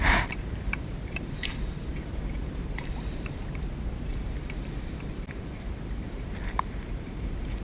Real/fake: fake